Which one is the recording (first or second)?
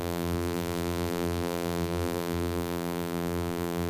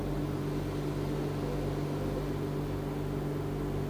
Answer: second